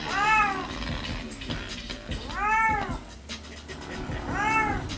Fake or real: real